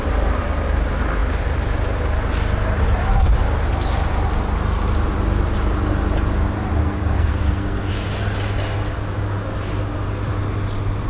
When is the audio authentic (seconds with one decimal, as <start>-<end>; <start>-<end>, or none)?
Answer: 0.0-6.8; 7.9-11.1